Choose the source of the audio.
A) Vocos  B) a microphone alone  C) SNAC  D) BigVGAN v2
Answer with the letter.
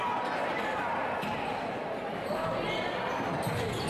B